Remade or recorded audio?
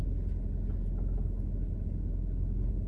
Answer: recorded